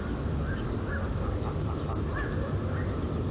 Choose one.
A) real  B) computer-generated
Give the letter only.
A